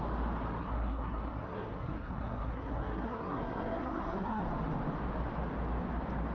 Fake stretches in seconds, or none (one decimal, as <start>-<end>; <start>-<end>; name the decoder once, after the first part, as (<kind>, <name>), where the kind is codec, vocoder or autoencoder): 0.6-4.4 (codec, SNAC)